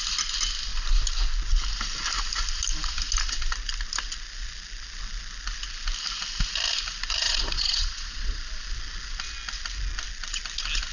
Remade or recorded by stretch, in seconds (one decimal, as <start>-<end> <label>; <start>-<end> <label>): 0.0-7.2 recorded; 7.2-8.4 remade; 8.4-10.9 recorded